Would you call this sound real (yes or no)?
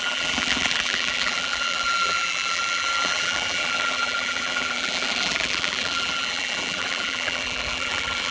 no